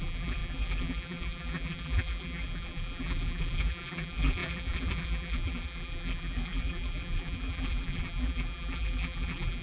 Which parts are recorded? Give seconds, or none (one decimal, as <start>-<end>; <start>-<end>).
none